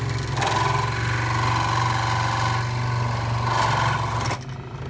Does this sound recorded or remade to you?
recorded